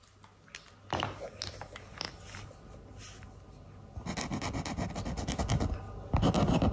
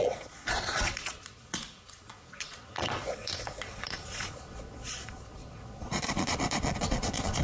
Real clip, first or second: first